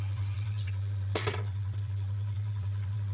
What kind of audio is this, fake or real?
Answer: fake